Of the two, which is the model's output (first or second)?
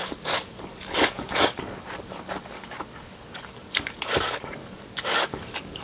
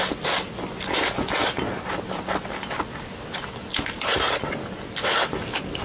first